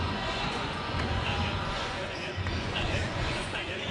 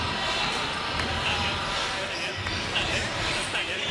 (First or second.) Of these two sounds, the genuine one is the second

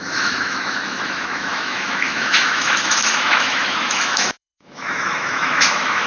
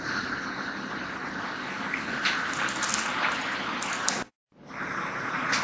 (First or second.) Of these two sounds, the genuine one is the second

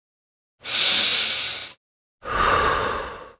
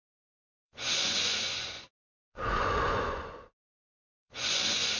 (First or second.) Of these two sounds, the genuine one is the first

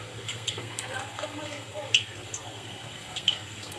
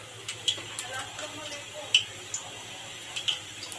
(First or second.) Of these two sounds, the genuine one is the second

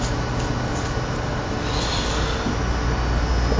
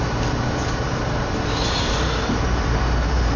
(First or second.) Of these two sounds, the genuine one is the first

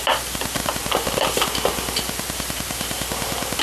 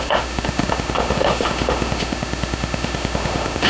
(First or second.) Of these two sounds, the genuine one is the first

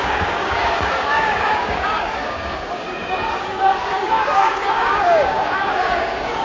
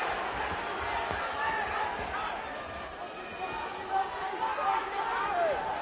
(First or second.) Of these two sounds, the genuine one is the second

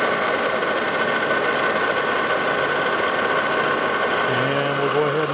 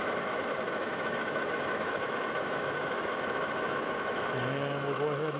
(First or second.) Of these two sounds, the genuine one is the first